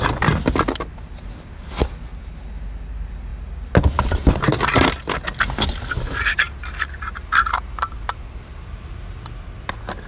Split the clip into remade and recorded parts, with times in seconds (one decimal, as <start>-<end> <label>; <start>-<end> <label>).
0.0-10.1 recorded